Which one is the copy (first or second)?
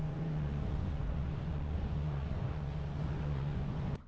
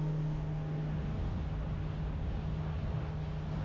first